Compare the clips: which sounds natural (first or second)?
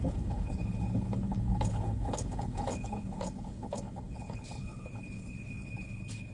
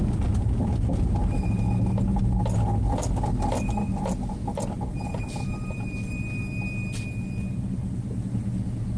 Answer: second